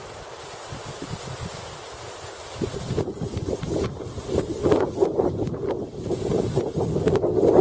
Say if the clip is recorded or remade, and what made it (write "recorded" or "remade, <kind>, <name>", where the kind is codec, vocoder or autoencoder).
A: recorded